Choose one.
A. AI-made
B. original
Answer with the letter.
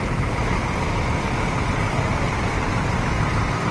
B